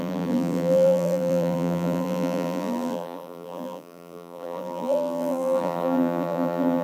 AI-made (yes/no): yes